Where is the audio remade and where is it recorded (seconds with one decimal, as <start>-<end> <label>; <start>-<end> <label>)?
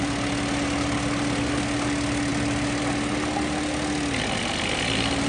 0.0-5.3 recorded